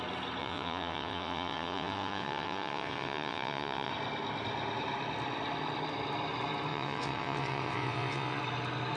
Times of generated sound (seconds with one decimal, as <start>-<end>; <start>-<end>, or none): 0.4-3.9; 6.7-8.4